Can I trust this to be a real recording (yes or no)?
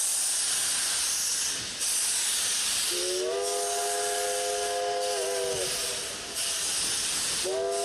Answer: yes